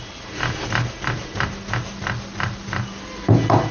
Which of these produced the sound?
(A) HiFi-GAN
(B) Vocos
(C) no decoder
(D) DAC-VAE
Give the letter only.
C